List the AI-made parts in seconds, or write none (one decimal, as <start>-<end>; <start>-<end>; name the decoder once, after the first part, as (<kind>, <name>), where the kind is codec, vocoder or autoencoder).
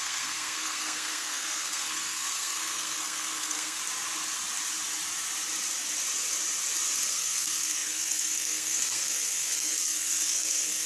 0.0-3.8 (codec, SNAC); 7.1-10.9